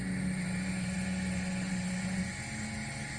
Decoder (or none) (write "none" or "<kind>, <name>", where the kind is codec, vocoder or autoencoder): none